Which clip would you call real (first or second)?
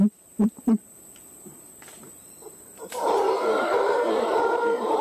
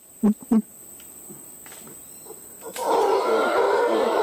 second